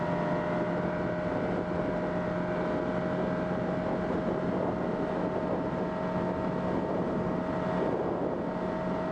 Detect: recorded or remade recorded